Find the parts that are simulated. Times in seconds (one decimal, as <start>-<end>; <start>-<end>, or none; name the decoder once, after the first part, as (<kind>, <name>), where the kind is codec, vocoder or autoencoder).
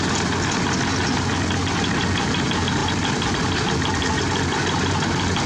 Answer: none